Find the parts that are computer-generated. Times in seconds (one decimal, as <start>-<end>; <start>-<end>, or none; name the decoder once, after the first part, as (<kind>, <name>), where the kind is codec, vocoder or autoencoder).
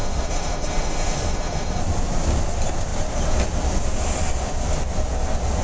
0.0-1.8 (autoencoder, DAC-VAE)